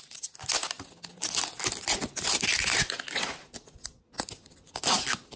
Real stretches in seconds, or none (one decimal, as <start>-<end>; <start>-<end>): 0.0-5.4